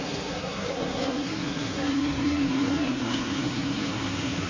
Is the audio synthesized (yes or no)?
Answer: yes